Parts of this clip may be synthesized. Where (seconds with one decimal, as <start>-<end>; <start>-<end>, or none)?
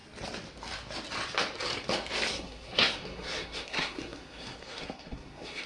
2.3-5.7